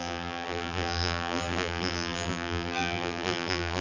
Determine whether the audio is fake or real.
fake